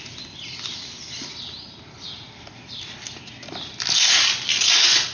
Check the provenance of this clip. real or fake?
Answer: real